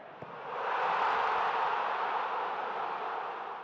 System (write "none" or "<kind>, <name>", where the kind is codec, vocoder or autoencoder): none